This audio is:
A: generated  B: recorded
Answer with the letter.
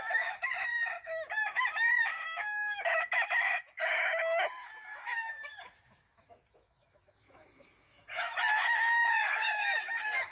A